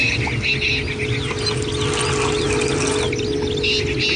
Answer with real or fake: real